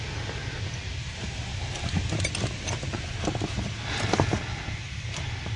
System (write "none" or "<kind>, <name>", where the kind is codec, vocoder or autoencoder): none